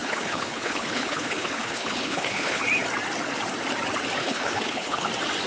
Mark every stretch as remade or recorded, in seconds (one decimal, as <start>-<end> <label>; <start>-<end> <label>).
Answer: 0.0-2.6 remade; 2.6-4.2 recorded; 4.2-5.1 remade; 5.1-5.5 recorded